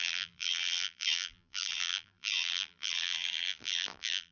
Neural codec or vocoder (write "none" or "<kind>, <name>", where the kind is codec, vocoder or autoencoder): vocoder, BigVGAN v2